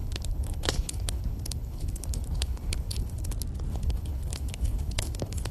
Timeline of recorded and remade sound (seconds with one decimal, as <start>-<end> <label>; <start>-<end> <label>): 0.0-3.3 remade; 3.3-3.7 recorded; 3.7-5.5 remade